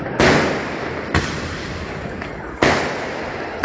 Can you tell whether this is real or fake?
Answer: real